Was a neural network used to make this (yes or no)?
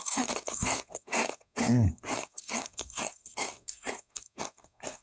yes